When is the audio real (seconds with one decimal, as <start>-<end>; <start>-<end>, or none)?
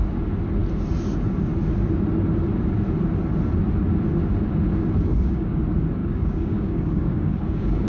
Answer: 0.0-5.1; 5.6-6.0